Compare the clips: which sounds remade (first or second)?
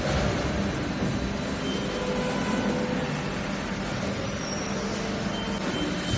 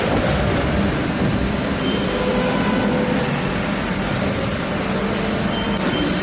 second